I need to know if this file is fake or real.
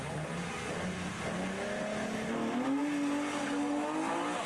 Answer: real